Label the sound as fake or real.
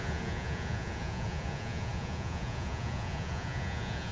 fake